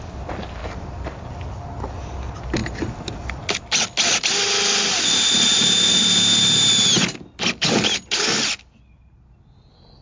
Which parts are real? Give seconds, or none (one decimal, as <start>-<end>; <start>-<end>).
0.0-10.0